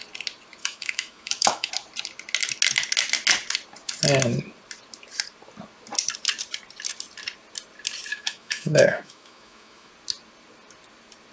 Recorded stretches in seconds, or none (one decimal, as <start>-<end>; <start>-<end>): 0.0-0.6; 1.7-8.1; 9.9-11.3